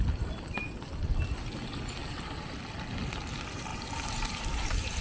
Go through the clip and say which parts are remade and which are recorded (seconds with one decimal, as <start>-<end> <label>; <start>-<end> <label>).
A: 0.0-2.0 recorded; 2.0-2.6 remade; 2.6-3.7 recorded; 3.7-5.0 remade